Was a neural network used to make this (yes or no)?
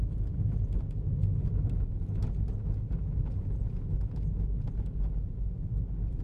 no